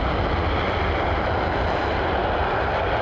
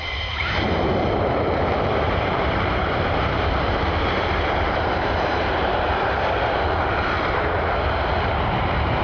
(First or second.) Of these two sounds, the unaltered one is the first